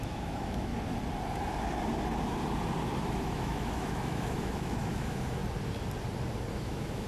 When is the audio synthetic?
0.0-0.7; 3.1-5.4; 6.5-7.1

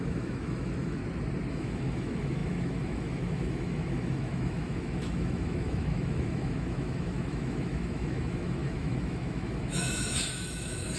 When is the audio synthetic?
0.0-1.0; 1.5-11.0

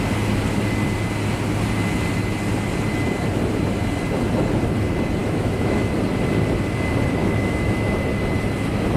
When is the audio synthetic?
5.2-5.8; 7.2-7.9

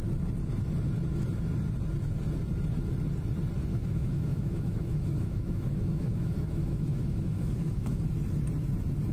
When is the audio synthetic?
3.7-8.0

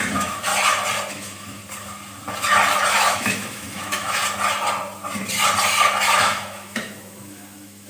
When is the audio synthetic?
0.0-0.5; 1.1-1.6; 2.9-4.2; 6.2-7.9